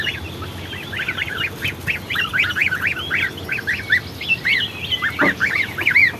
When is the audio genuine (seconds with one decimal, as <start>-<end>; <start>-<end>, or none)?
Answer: 0.0-6.2